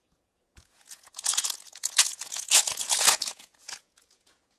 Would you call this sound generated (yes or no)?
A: yes